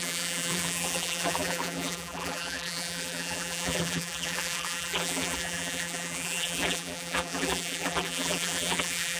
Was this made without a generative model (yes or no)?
no